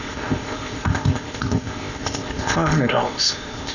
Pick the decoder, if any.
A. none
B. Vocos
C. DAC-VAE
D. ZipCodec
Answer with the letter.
D